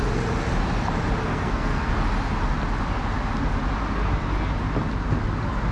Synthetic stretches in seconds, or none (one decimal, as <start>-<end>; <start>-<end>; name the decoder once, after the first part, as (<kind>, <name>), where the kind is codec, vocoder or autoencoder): 1.3-1.9 (codec, SNAC)